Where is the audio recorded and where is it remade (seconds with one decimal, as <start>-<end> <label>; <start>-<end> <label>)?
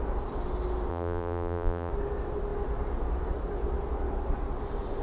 0.0-0.9 recorded; 0.9-1.9 remade; 1.9-5.0 recorded